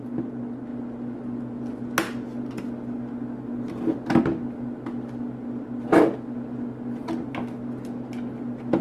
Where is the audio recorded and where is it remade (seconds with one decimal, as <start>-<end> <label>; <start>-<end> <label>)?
0.0-8.8 recorded